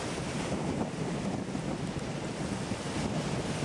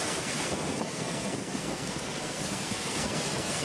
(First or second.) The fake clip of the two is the second